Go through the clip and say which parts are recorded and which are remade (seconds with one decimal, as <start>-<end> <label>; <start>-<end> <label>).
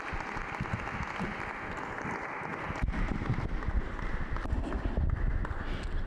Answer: 0.0-2.5 recorded; 2.5-5.3 remade; 5.3-6.1 recorded